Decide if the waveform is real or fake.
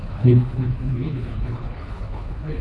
fake